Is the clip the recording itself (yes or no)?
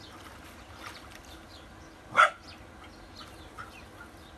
yes